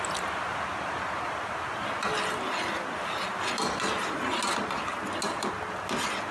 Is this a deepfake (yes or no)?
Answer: no